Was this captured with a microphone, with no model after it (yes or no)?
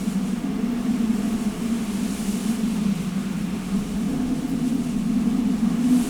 yes